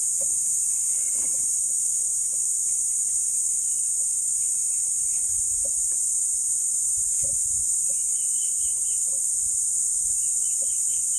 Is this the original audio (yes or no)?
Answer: no